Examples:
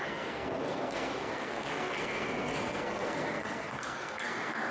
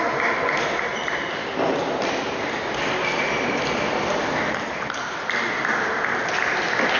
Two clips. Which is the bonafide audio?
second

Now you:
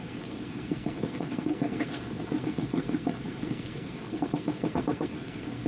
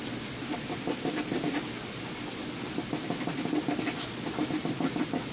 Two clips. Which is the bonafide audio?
second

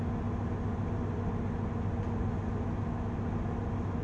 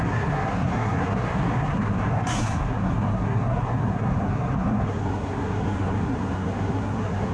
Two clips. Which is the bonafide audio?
first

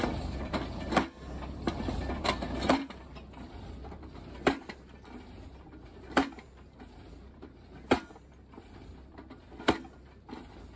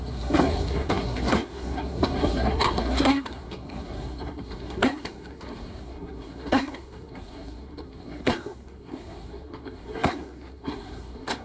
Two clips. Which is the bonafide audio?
first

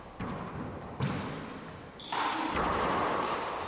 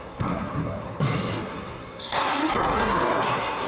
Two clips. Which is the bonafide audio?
first